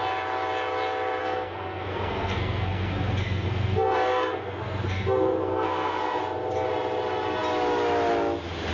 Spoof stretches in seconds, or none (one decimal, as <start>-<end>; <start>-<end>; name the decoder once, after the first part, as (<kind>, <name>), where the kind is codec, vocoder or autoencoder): 1.2-6.2 (codec, SNAC)